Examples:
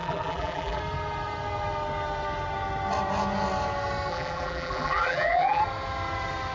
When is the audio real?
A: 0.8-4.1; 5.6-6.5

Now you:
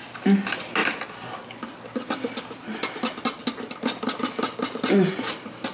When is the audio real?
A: 0.0-5.7

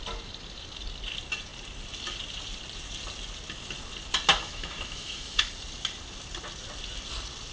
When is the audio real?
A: 0.0-4.3; 5.4-7.5

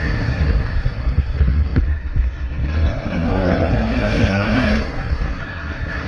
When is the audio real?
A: none

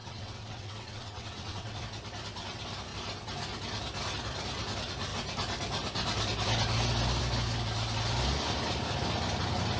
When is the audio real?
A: 1.8-9.8

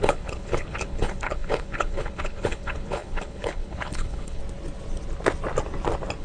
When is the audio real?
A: 4.4-6.2